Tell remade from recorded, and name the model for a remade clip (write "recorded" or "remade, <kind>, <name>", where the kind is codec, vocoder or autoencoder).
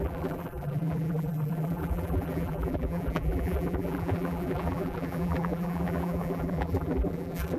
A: remade, vocoder, BigVGAN v2